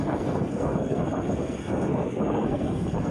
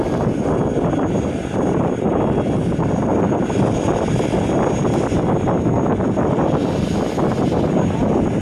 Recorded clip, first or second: second